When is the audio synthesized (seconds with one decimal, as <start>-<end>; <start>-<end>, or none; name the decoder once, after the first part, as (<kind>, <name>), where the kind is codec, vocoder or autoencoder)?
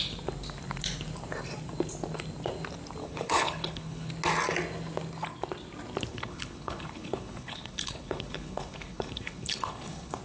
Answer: 3.0-4.1 (codec, HILCodec); 6.1-10.2